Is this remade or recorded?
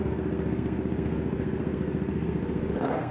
remade